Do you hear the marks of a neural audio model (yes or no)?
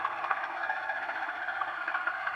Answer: yes